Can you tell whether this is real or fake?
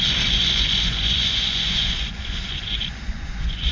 fake